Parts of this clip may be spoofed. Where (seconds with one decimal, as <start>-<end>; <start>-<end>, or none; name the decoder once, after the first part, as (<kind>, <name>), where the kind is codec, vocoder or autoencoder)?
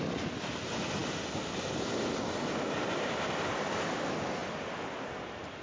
none